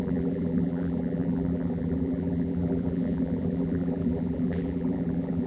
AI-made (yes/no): yes